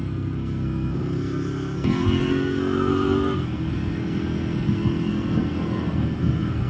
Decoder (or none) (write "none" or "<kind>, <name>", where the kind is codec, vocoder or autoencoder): codec, SNAC